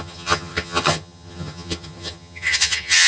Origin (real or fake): fake